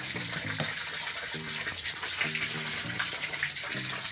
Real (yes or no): no